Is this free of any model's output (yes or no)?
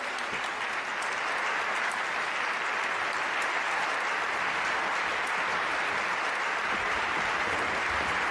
yes